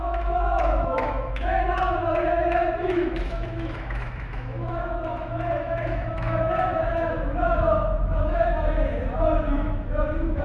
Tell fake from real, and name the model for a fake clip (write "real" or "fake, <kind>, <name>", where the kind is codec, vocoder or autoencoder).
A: fake, autoencoder, DAC-VAE